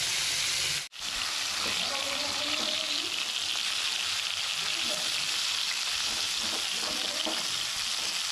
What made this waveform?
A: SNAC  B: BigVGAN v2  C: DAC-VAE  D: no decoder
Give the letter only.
D